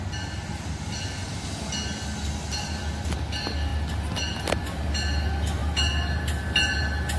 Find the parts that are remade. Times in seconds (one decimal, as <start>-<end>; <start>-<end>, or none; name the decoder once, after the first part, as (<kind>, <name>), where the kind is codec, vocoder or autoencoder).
none